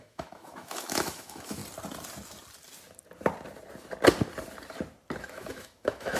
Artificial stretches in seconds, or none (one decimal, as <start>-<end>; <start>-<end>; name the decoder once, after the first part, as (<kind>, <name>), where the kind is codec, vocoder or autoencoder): 0.0-1.6 (autoencoder, DAC-VAE); 5.2-6.2